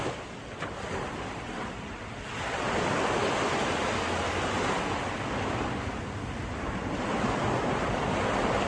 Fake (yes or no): no